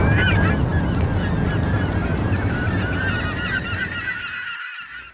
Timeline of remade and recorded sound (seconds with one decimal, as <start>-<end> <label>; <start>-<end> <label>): 0.0-5.1 recorded